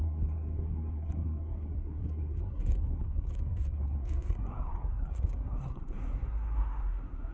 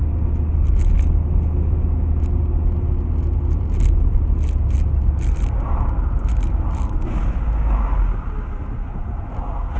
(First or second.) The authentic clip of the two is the second